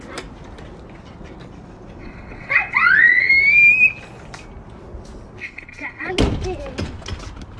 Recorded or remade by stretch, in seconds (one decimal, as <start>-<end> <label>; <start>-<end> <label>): 0.0-2.0 recorded; 2.0-3.3 remade; 3.3-5.4 recorded; 5.4-6.1 remade; 6.1-7.6 recorded